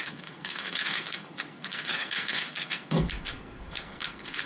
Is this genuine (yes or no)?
no